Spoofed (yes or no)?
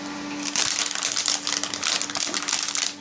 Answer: no